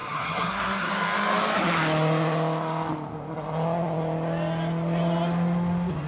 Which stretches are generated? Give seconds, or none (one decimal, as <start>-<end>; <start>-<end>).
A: 0.0-0.9

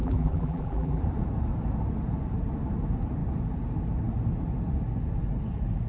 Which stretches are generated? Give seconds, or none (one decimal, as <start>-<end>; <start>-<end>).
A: 0.0-1.0

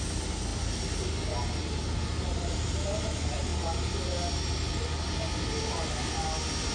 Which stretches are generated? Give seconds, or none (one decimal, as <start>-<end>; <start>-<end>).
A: none

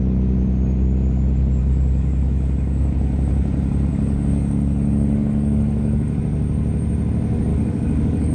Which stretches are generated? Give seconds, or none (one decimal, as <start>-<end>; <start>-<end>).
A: 1.6-2.9; 3.9-6.2; 7.5-8.3

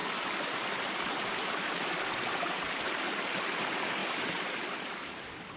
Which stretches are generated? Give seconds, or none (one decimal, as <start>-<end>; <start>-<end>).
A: 3.4-5.6

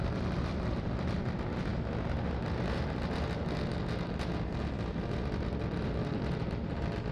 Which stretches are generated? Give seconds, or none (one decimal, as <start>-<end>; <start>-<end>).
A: 0.0-1.7; 5.6-7.1